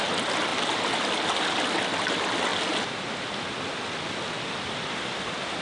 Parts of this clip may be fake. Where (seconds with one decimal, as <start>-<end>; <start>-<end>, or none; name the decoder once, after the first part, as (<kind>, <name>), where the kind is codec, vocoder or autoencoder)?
none